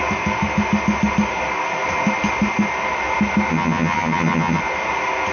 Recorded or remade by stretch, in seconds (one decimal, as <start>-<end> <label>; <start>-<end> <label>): 0.0-3.5 recorded; 3.5-4.6 remade; 4.6-5.3 recorded